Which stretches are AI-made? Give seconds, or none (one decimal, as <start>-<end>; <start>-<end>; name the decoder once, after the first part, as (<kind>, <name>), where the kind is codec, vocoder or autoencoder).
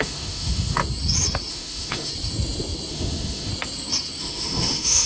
0.0-0.8 (autoencoder, DAC-VAE); 1.5-2.1; 2.9-3.5; 4.2-5.0